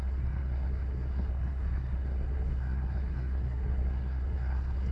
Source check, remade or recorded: remade